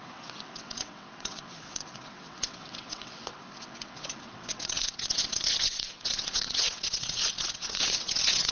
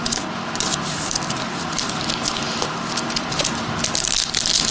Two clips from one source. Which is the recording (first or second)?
second